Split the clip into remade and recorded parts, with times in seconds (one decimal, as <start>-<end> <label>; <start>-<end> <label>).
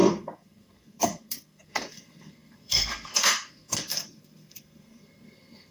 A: 0.0-5.7 remade